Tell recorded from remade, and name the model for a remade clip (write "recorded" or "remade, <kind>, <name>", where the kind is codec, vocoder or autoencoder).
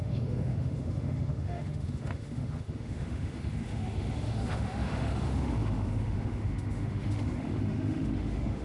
remade, autoencoder, DAC-VAE